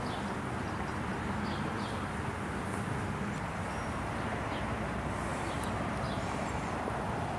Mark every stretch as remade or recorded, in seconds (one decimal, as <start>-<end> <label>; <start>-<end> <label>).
0.0-5.3 recorded; 5.3-6.7 remade; 6.7-7.4 recorded